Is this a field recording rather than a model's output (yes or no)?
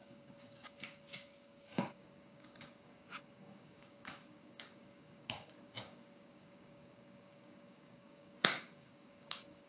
no